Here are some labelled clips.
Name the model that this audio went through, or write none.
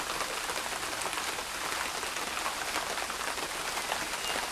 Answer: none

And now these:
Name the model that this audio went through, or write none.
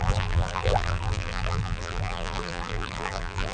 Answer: vocoder, BigVGAN v2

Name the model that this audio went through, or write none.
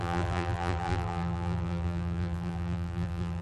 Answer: vocoder, BigVGAN v2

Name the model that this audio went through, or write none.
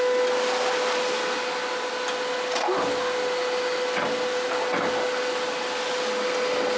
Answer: none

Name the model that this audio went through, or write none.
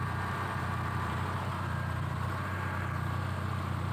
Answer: vocoder, BigVGAN v2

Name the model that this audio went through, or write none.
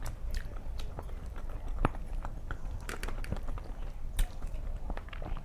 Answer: vocoder, BigVGAN v2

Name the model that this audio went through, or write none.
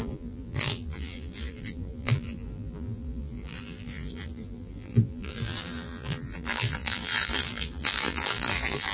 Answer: vocoder, BigVGAN v2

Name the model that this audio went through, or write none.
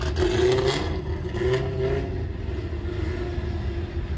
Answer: none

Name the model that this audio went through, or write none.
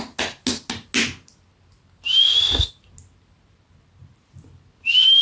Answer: none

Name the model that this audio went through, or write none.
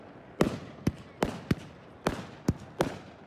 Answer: none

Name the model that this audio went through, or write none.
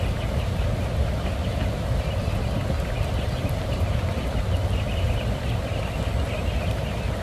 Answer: vocoder, BigVGAN v2